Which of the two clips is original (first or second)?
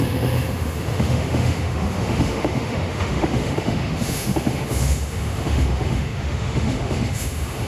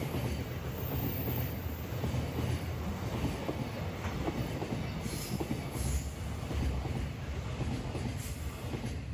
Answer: second